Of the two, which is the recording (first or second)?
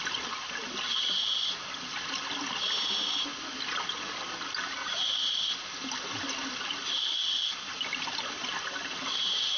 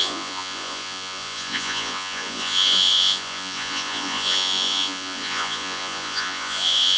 first